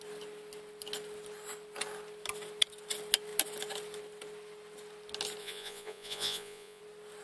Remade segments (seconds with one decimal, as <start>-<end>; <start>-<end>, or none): 5.4-6.8